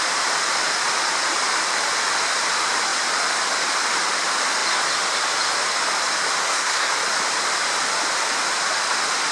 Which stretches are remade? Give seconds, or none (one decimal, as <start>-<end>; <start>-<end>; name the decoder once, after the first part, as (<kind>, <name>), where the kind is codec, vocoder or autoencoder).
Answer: 6.4-6.9 (codec, SNAC)